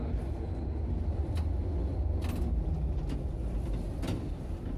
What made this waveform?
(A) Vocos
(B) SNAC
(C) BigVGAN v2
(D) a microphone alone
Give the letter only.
D